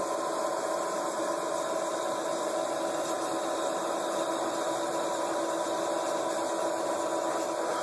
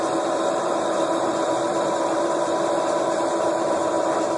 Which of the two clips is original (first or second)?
first